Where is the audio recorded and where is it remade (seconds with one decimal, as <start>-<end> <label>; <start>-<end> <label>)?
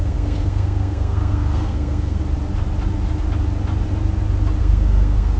0.0-2.2 remade; 2.2-4.6 recorded; 4.6-5.4 remade